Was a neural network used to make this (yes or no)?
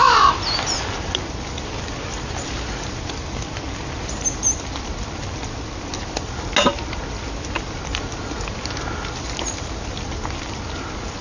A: no